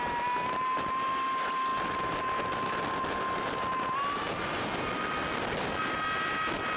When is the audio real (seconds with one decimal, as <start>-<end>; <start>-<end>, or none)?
0.0-6.8